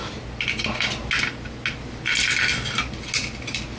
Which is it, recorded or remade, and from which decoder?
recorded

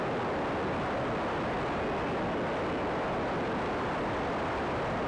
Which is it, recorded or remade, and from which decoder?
recorded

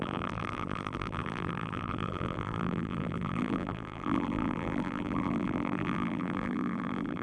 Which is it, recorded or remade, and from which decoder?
remade, vocoder, BigVGAN v2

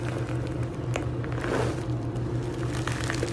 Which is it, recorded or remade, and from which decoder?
recorded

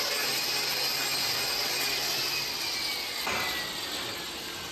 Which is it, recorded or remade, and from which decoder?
recorded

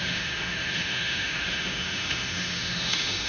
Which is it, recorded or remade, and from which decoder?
remade, autoencoder, DAC-VAE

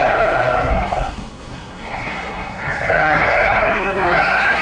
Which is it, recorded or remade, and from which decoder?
remade, codec, SNAC